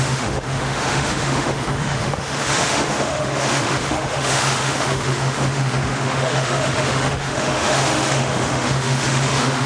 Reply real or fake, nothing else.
fake